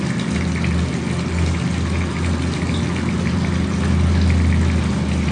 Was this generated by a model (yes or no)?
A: no